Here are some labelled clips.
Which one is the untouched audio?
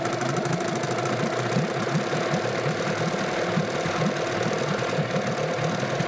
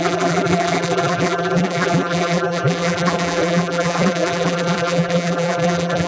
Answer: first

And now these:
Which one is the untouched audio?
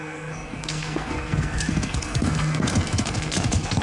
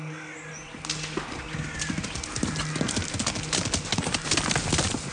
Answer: second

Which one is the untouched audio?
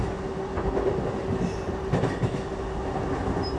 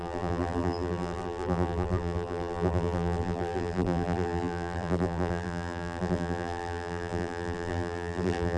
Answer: first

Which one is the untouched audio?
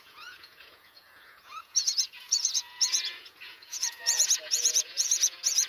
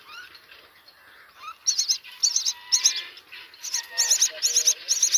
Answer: second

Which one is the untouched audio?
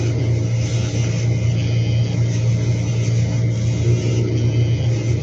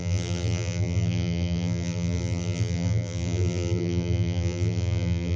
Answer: first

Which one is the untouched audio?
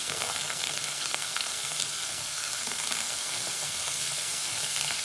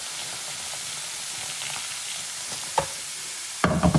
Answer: second